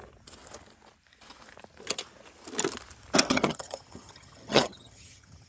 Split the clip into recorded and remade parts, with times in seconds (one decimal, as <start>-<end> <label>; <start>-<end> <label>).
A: 0.0-3.3 recorded; 3.3-5.5 remade